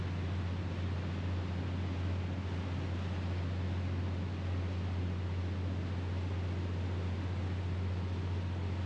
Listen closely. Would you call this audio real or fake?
real